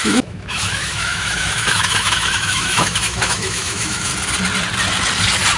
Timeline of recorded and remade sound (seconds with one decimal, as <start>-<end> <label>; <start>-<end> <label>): 0.0-4.1 remade; 4.1-5.6 recorded